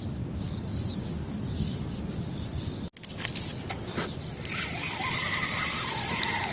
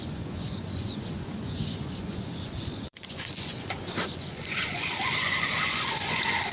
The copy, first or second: second